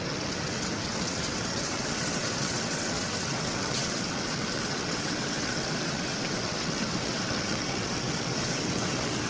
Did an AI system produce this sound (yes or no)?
yes